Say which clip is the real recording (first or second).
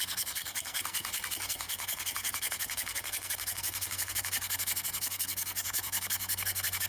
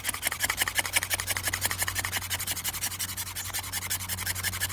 second